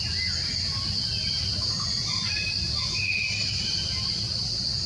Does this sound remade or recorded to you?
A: recorded